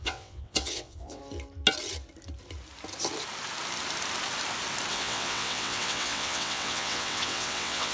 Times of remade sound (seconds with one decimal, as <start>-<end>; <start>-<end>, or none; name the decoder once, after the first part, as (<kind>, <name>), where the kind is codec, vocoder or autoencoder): 0.0-1.2 (vocoder, WaveNeXt); 4.9-7.9